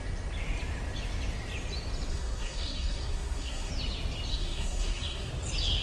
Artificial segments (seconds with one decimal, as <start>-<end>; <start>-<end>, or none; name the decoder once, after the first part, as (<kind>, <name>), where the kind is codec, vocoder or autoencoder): 2.1-3.7 (codec, SNAC); 4.3-5.3